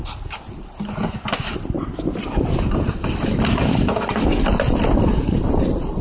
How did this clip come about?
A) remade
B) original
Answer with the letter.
B